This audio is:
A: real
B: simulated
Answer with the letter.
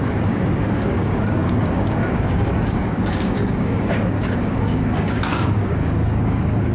B